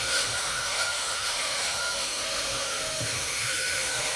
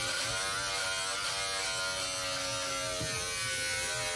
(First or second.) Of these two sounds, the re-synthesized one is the first